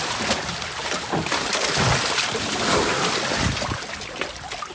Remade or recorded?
recorded